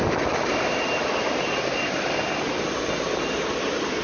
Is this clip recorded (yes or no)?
yes